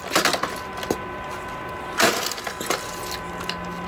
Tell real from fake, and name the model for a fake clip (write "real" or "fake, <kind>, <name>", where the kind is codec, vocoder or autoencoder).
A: real